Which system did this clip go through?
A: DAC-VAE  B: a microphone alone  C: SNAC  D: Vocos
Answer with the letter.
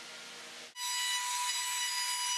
B